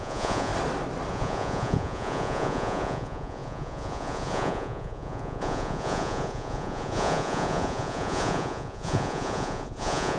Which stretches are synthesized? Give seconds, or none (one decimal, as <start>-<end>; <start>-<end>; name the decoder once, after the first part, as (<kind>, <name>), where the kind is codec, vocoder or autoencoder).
0.0-0.5 (vocoder, Vocos); 1.1-10.2